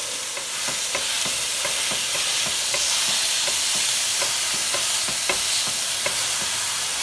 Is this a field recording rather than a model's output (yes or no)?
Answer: yes